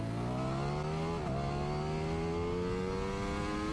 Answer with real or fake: real